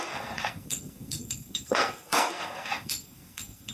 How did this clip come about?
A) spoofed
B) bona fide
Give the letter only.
A